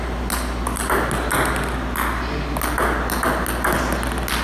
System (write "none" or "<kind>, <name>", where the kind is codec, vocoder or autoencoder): none